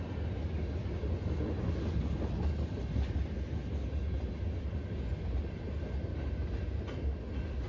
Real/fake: real